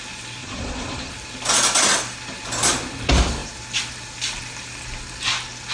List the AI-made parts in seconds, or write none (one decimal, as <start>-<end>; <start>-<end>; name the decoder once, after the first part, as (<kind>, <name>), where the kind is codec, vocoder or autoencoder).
0.4-1.1 (vocoder, Vocos)